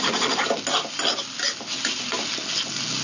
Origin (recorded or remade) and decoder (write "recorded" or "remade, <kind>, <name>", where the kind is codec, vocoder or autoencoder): recorded